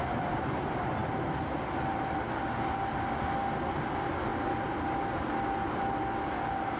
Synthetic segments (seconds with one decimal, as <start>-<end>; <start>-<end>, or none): none